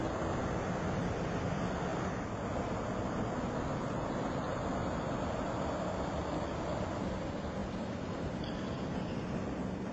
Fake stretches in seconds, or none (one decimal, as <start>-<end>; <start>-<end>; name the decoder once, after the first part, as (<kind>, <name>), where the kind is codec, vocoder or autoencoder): none